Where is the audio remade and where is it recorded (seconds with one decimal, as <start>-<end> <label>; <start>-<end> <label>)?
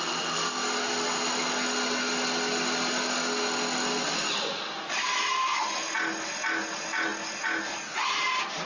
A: 0.0-8.7 recorded